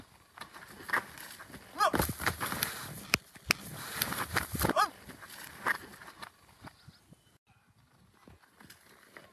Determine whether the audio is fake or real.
real